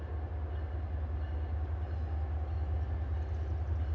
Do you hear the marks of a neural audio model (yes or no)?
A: no